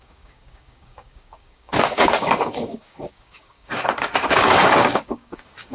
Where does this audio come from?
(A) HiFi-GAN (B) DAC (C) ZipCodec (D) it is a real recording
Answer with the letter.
B